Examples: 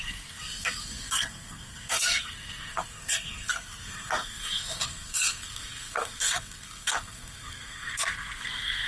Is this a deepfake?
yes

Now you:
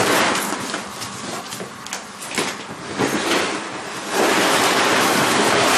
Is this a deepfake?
no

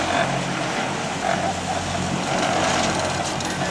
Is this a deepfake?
no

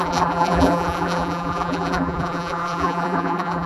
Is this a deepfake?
yes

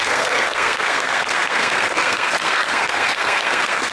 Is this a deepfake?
yes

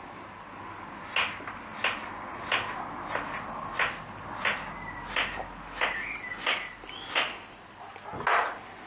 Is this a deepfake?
no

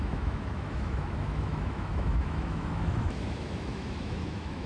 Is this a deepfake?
yes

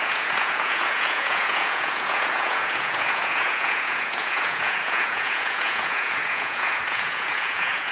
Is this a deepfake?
yes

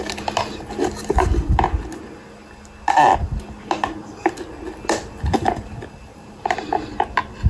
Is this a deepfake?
no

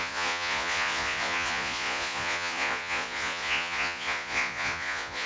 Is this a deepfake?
yes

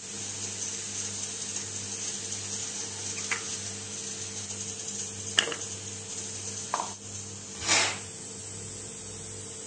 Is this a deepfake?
no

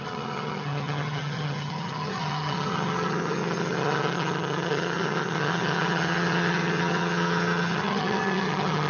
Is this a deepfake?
yes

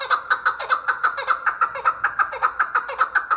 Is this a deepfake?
no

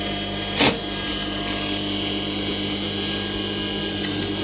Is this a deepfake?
no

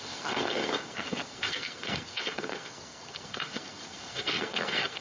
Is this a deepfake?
yes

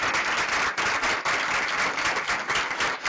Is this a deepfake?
no